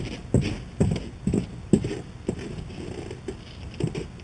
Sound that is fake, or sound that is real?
real